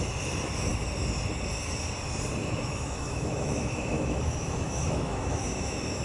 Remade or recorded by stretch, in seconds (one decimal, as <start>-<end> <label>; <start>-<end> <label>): 0.0-2.4 recorded; 2.4-6.0 remade